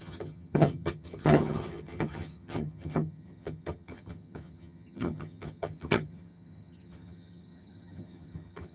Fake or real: fake